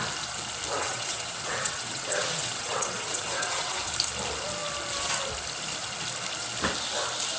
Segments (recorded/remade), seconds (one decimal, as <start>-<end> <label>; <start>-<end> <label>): 0.0-0.8 recorded; 0.8-3.9 remade; 3.9-7.4 recorded